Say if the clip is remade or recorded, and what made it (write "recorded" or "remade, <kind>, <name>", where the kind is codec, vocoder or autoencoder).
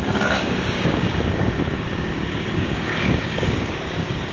remade, codec, DAC